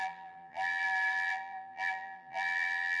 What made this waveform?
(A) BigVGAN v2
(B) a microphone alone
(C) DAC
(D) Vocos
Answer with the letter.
A